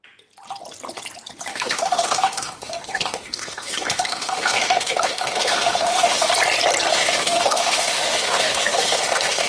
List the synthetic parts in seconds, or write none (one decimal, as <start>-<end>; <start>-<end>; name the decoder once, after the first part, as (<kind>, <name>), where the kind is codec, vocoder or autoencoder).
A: 1.5-6.3 (autoencoder, DAC-VAE); 6.9-9.5